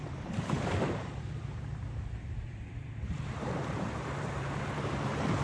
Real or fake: fake